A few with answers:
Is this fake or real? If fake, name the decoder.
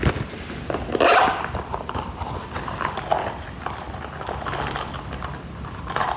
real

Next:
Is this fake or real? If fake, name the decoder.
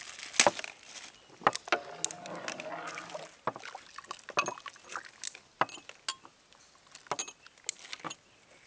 real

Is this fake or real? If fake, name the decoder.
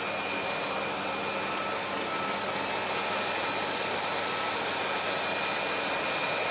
real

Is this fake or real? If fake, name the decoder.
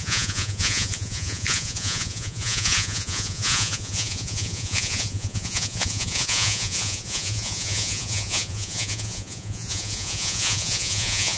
fake, vocoder, Vocos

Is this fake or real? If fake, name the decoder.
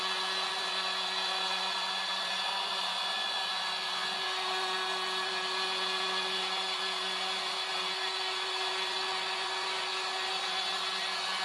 fake, vocoder, Vocos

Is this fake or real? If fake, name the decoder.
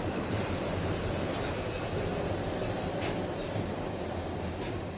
real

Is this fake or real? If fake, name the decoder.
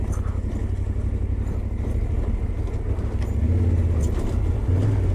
real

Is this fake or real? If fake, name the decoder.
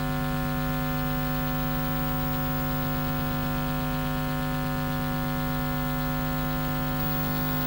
real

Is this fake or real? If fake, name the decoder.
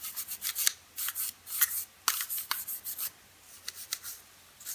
real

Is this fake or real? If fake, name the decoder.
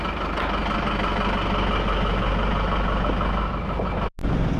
real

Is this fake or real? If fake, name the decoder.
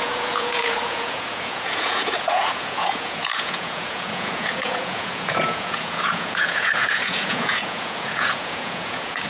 fake, vocoder, Vocos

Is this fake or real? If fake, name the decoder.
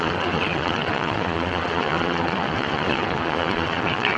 fake, vocoder, Vocos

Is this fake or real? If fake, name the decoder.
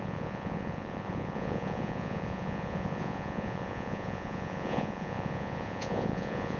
fake, vocoder, Vocos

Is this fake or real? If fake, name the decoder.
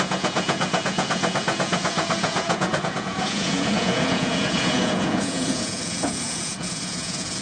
fake, vocoder, Vocos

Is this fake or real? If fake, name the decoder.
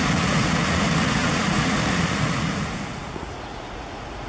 fake, vocoder, Vocos